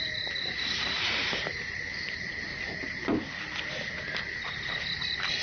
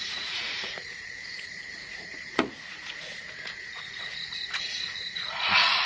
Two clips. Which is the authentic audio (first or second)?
first